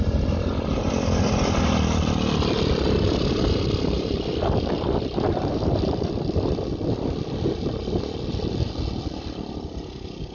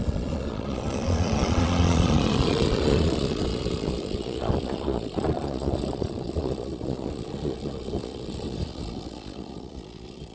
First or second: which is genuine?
first